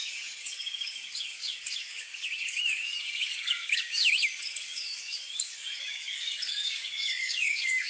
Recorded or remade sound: remade